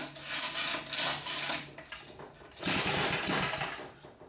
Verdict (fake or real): real